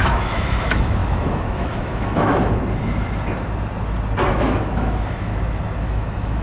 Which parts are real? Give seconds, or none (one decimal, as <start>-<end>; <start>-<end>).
2.6-4.3; 5.3-5.8